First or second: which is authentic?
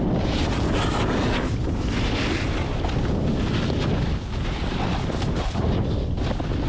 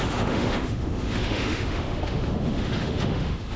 first